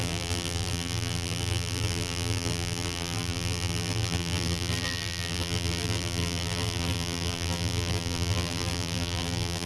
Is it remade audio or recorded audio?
remade